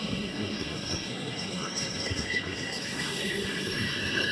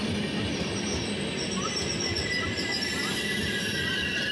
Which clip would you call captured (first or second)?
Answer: second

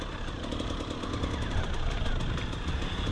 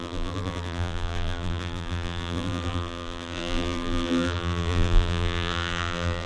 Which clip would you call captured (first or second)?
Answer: first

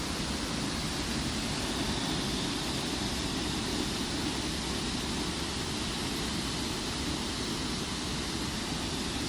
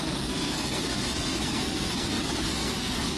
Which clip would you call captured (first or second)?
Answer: first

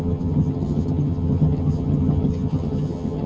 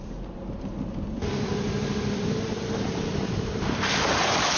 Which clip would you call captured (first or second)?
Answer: second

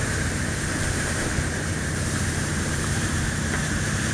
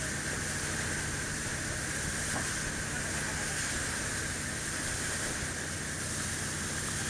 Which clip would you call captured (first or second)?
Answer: second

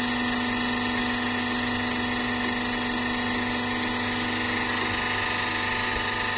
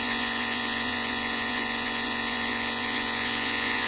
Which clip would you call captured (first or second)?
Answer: first